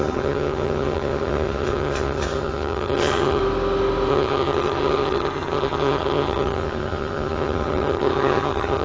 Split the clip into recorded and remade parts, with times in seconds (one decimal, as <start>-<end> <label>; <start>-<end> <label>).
0.0-3.4 remade; 3.4-4.1 recorded; 4.1-8.8 remade